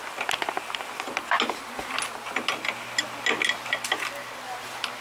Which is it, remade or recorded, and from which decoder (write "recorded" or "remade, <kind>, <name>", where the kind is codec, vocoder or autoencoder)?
recorded